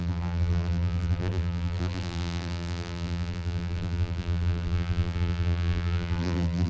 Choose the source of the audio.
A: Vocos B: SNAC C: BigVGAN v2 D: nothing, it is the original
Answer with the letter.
C